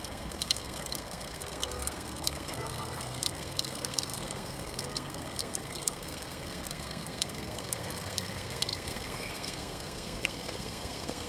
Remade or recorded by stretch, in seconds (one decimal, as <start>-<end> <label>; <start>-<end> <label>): 0.0-11.3 remade